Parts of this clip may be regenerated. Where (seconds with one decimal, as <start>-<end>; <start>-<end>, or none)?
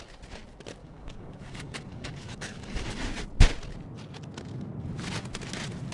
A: 0.8-3.0